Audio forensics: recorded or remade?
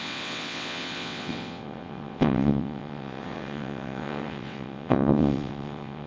remade